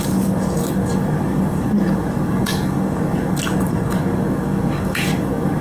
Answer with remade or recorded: remade